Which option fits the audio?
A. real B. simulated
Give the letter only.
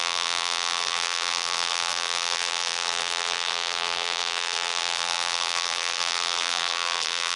B